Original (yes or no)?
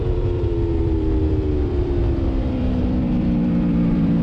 no